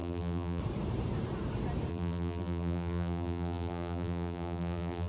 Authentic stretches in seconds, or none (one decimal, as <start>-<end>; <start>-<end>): 0.6-1.9